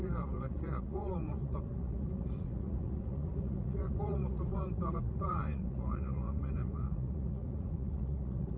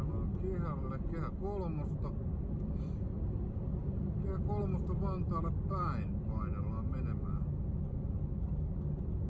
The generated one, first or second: first